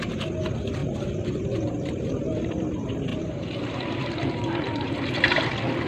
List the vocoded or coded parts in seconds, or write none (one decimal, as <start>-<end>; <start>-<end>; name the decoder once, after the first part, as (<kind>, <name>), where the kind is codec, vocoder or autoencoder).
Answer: 0.8-2.6 (vocoder, BigVGAN v2); 3.1-5.4